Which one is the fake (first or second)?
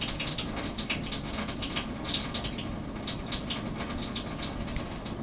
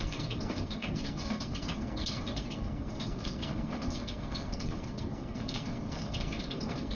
second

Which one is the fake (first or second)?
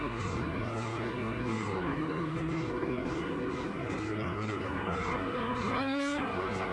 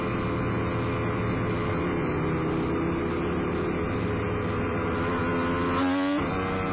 first